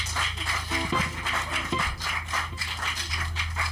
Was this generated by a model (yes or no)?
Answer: no